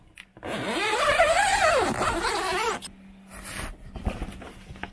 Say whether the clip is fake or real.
real